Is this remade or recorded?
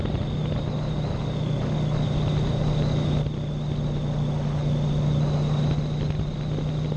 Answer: recorded